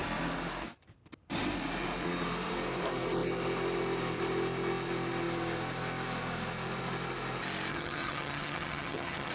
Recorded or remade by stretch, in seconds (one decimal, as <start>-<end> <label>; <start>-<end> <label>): 0.0-7.7 recorded; 7.7-9.3 remade

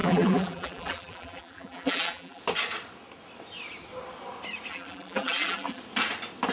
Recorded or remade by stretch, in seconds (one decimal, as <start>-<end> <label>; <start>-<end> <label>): 0.0-2.4 remade; 2.4-4.7 recorded; 4.7-5.8 remade; 5.8-6.5 recorded

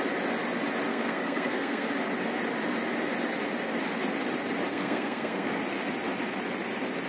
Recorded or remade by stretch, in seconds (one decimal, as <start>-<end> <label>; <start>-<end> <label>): 0.0-0.9 recorded; 0.9-1.9 remade; 1.9-4.7 recorded; 4.7-5.6 remade; 5.6-7.1 recorded

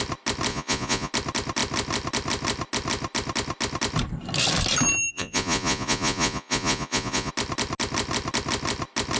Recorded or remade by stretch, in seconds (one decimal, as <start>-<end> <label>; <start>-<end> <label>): 0.0-0.5 recorded; 0.5-1.1 remade; 1.1-5.1 recorded; 5.1-7.3 remade; 7.3-9.2 recorded

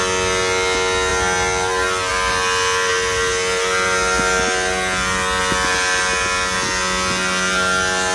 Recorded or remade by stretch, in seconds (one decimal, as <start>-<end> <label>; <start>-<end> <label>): 0.0-8.1 recorded

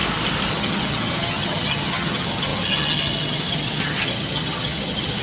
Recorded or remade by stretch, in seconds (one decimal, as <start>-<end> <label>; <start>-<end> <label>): 0.0-0.5 recorded; 0.5-5.2 remade

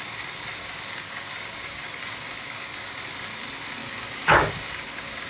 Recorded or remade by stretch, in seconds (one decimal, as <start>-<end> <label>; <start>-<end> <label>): 0.0-0.6 recorded; 0.6-3.0 remade; 3.0-3.8 recorded; 3.8-5.3 remade

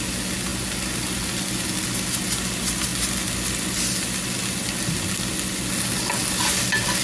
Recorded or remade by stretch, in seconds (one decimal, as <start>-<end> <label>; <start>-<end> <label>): 0.0-7.0 recorded